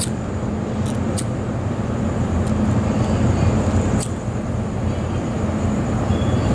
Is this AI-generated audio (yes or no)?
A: no